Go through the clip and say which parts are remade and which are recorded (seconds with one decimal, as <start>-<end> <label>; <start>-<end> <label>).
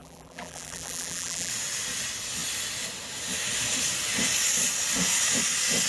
0.0-1.5 remade; 1.5-5.9 recorded